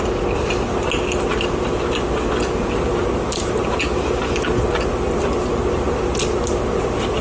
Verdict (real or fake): real